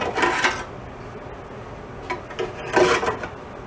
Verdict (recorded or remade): recorded